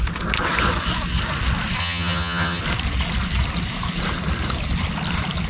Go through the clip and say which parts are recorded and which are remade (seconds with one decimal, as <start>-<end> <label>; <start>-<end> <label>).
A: 0.0-1.8 recorded; 1.8-2.6 remade; 2.6-5.5 recorded